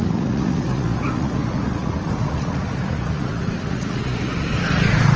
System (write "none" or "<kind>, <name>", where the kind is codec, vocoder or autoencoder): vocoder, Vocos